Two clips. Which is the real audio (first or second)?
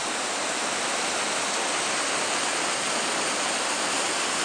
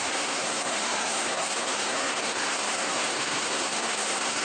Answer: first